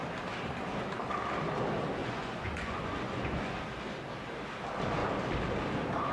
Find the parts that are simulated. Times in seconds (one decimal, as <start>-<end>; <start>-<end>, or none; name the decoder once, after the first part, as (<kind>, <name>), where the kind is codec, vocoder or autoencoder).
2.0-3.6 (vocoder, Vocos)

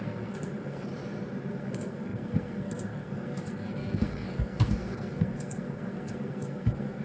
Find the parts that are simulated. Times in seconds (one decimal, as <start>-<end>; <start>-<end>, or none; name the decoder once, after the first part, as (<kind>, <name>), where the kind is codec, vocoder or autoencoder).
0.0-0.9 (codec, SNAC); 1.5-7.0

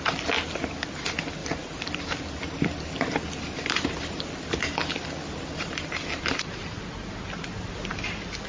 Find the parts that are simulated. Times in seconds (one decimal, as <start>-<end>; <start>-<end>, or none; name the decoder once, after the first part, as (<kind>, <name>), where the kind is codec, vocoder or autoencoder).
none

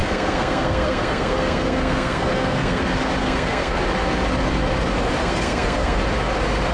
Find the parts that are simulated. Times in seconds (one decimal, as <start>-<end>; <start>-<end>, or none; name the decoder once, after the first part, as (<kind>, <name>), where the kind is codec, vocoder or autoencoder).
0.0-2.8 (codec, SNAC); 3.2-3.8; 5.2-6.0

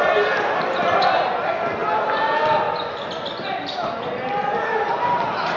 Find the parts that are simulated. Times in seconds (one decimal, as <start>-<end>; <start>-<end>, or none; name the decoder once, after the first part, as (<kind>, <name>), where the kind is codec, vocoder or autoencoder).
none